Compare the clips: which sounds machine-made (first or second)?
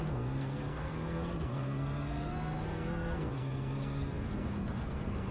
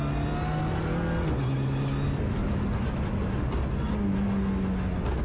first